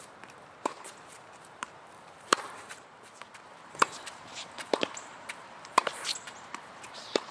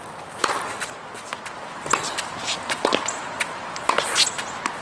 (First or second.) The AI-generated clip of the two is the first